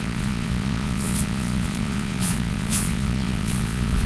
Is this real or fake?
fake